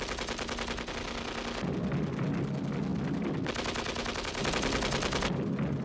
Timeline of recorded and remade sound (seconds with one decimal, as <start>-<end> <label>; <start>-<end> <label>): 0.0-5.8 recorded